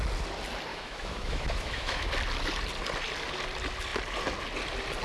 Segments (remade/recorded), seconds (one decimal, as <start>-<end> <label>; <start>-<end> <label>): 0.0-0.7 recorded; 0.7-2.1 remade; 2.1-5.0 recorded